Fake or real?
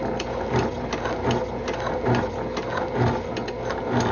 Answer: real